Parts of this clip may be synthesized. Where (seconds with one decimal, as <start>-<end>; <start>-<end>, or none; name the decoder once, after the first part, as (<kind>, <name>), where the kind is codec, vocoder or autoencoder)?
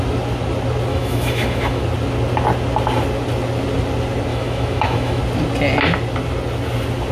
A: 0.9-1.8 (autoencoder, DAC-VAE); 4.3-5.2